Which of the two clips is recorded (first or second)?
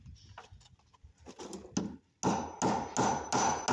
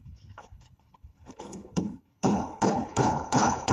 first